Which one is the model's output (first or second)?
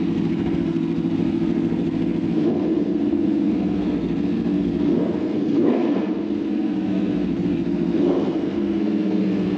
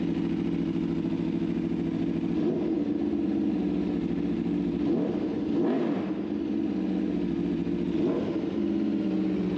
first